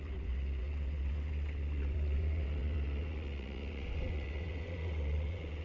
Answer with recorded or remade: remade